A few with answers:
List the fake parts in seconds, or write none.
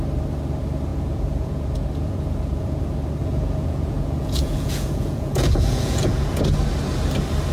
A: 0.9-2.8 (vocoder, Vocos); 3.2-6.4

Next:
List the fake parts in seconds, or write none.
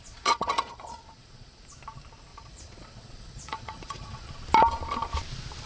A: 0.0-1.6 (vocoder, Vocos); 2.3-4.2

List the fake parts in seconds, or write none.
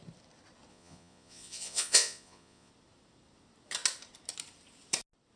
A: 0.7-2.7 (vocoder, Vocos)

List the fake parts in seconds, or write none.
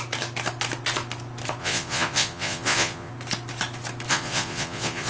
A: 1.6-3.1 (vocoder, Vocos); 4.1-5.1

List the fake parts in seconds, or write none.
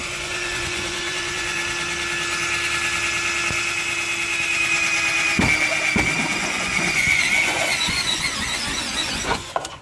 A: 0.0-1.6 (vocoder, Vocos); 6.4-9.8